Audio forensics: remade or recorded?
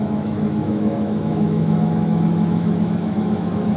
remade